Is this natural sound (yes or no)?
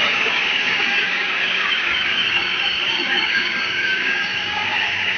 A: no